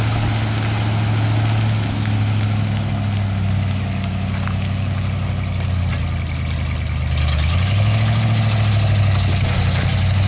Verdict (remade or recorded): recorded